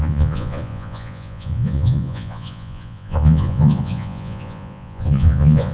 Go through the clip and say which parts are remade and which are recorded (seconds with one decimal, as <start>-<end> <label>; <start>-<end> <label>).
0.0-5.7 remade